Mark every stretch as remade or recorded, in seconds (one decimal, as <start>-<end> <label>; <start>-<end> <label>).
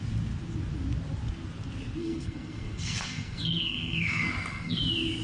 0.0-2.0 recorded; 2.0-4.8 remade; 4.8-5.2 recorded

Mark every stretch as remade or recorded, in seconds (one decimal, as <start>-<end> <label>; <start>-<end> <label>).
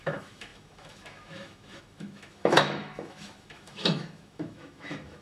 0.0-5.2 remade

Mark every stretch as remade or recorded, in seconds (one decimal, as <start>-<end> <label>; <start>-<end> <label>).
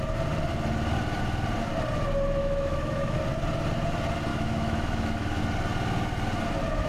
0.0-2.4 recorded; 2.4-3.2 remade; 3.2-4.3 recorded; 4.3-5.4 remade; 5.4-6.9 recorded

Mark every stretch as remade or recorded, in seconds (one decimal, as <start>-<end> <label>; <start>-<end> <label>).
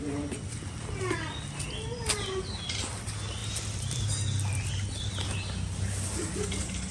0.0-6.9 recorded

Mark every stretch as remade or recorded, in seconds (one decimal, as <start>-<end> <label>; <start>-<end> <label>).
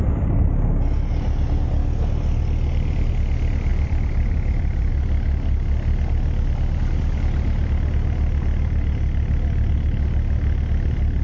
0.0-3.7 recorded; 3.7-4.9 remade; 4.9-11.2 recorded